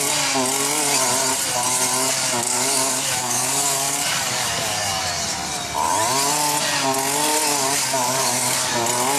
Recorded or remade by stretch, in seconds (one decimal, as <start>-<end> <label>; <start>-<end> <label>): 0.0-2.0 recorded; 2.0-5.0 remade; 5.0-7.6 recorded; 7.6-8.7 remade; 8.7-9.2 recorded